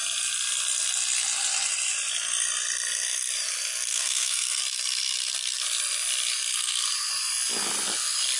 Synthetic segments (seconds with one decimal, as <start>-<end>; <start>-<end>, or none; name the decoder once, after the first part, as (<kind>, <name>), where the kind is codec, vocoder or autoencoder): 3.9-4.6 (codec, SNAC)